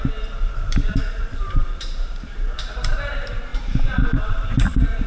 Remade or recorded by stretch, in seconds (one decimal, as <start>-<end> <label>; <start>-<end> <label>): 0.0-5.1 remade